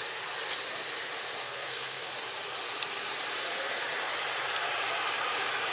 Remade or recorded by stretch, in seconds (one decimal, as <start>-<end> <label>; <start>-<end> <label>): 0.0-1.4 recorded; 1.4-2.1 remade; 2.1-5.7 recorded